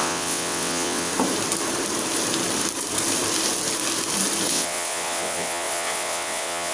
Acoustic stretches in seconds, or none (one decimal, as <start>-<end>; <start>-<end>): 1.1-4.5